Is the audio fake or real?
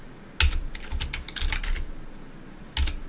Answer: real